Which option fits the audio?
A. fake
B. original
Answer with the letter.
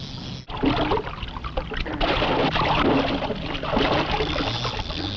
B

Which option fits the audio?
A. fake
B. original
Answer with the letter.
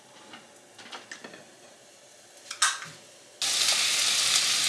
B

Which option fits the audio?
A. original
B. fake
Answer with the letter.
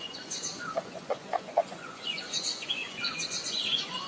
B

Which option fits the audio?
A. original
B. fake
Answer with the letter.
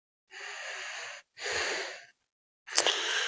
A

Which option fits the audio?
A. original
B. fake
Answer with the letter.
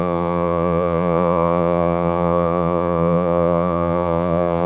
B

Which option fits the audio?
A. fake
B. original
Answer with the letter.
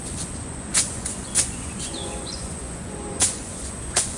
A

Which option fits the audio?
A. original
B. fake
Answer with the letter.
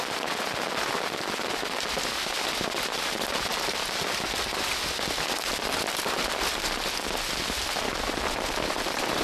A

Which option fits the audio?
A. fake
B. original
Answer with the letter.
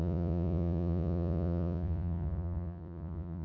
A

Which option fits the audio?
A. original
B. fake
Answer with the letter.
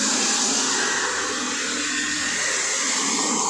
A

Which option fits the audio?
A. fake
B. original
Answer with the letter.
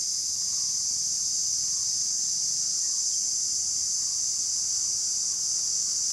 B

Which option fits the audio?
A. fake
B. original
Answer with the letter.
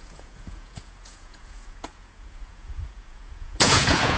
A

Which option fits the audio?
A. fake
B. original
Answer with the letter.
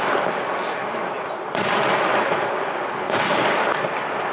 B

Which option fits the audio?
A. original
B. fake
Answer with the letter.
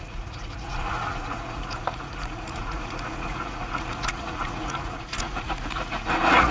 B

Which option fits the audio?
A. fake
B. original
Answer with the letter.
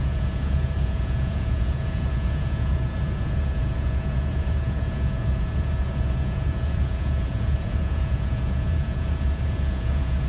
A